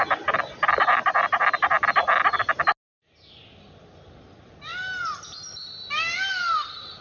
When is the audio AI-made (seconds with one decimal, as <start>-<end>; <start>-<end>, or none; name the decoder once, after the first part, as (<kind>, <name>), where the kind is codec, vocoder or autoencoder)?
none